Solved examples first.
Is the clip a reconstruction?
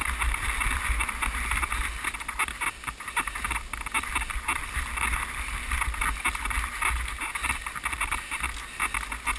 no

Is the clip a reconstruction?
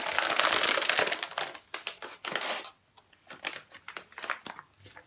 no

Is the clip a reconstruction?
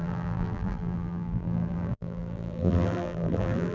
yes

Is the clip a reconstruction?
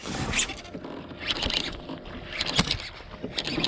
no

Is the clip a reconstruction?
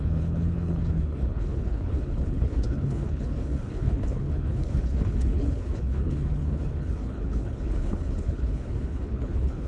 yes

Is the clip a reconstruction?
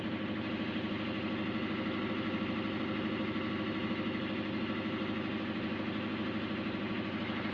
no